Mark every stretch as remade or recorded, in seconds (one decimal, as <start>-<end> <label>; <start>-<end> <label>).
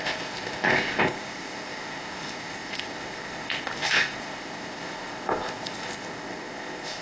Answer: 0.0-7.0 remade